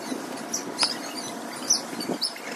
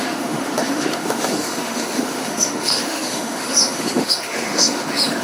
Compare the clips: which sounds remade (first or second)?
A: second